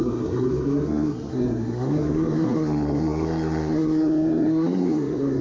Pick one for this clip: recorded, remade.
remade